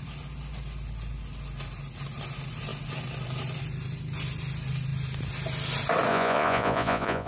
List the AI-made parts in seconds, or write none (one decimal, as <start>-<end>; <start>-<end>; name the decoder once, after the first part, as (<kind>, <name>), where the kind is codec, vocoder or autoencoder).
6.1-7.3 (vocoder, Vocos)